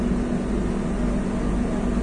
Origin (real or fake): real